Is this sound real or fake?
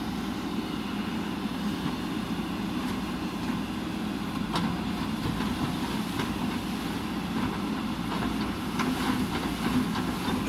real